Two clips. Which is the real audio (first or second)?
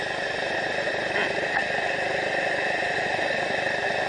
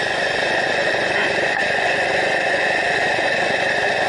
first